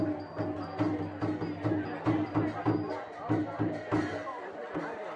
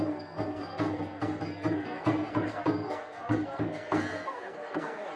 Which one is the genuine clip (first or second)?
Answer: first